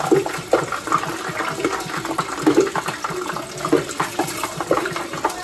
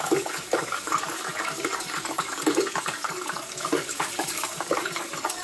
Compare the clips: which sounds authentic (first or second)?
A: first